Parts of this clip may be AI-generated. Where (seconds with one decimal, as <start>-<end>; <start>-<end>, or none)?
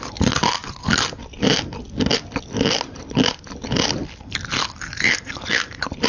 none